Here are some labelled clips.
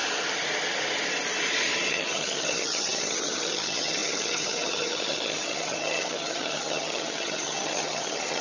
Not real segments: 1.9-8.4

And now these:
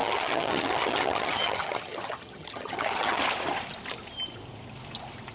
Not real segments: 0.0-3.2

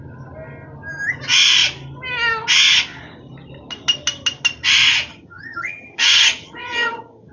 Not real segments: 5.1-7.3